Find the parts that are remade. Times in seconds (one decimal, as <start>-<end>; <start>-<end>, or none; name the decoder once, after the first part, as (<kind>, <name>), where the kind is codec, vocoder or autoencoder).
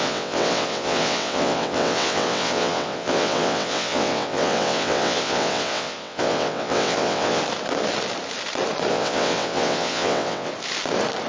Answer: 0.0-7.4 (vocoder, WaveNeXt); 8.9-10.5